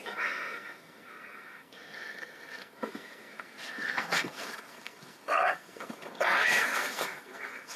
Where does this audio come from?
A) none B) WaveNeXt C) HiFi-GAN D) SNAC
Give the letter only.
D